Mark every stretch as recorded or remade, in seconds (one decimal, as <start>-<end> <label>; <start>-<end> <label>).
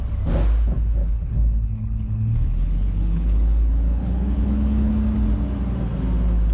0.0-1.0 recorded; 1.0-4.9 remade; 4.9-6.5 recorded